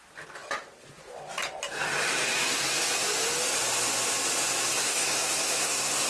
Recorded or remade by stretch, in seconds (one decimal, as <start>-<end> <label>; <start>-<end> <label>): 0.0-4.7 recorded; 4.7-6.1 remade